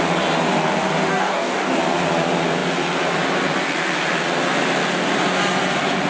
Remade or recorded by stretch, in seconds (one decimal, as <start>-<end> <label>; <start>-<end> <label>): 0.0-1.1 recorded; 1.1-1.8 remade; 1.8-6.1 recorded